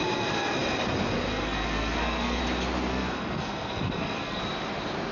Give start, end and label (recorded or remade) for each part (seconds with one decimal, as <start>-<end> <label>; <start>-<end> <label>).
0.0-1.3 recorded; 1.3-2.4 remade; 2.4-2.9 recorded; 2.9-4.4 remade; 4.4-5.1 recorded

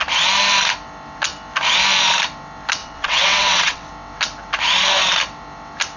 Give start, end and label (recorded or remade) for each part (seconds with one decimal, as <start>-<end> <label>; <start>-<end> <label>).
0.0-2.8 recorded; 2.8-3.9 remade; 3.9-6.0 recorded